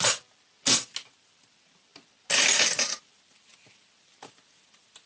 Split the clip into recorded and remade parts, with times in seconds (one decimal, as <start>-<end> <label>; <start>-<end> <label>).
0.0-5.1 recorded